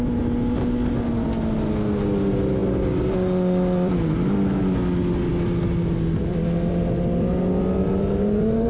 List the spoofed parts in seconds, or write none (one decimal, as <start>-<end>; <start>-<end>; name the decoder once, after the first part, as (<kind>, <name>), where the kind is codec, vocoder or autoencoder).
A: 7.8-8.7 (vocoder, BigVGAN v2)